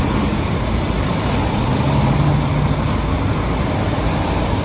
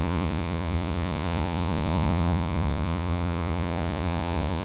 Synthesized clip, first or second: second